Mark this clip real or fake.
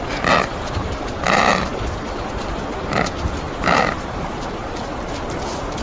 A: real